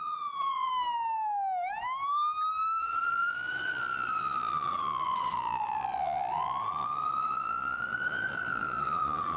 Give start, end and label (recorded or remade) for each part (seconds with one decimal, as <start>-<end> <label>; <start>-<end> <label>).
0.0-0.7 remade; 0.7-2.8 recorded; 2.8-9.4 remade